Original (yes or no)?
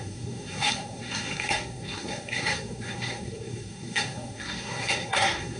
no